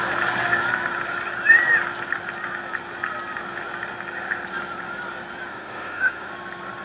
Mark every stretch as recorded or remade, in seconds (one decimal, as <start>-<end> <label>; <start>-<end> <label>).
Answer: 0.0-5.5 recorded; 5.5-6.3 remade; 6.3-6.8 recorded